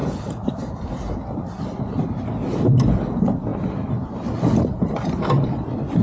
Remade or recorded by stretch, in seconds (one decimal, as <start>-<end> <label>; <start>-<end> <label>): 0.0-1.9 remade; 1.9-3.5 recorded; 3.5-4.1 remade; 4.1-6.0 recorded